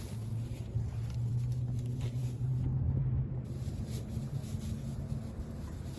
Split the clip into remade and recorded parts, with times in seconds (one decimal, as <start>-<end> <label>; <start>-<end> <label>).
0.0-0.7 remade; 0.7-1.3 recorded; 1.3-4.4 remade; 4.4-5.6 recorded; 5.6-6.0 remade

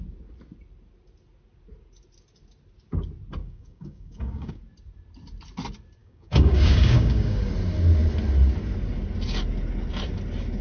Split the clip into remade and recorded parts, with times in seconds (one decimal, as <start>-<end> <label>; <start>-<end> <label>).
0.0-3.4 recorded; 3.4-4.6 remade; 4.6-6.0 recorded; 6.0-7.5 remade; 7.5-10.6 recorded

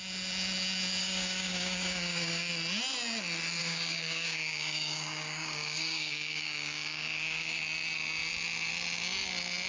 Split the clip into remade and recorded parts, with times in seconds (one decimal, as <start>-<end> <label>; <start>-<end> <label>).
0.0-1.0 recorded; 1.0-2.5 remade; 2.5-3.6 recorded; 3.6-7.6 remade; 7.6-9.7 recorded

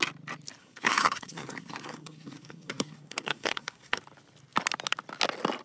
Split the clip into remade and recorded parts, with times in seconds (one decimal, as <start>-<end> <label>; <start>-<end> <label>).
0.0-0.6 recorded; 0.6-4.0 remade; 4.0-5.6 recorded

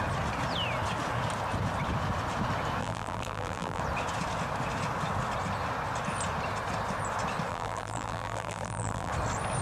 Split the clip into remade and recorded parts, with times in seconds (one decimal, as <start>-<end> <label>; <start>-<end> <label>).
0.0-2.8 recorded; 2.8-3.8 remade; 3.8-7.5 recorded; 7.5-9.1 remade; 9.1-9.6 recorded